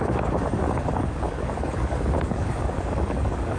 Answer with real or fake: fake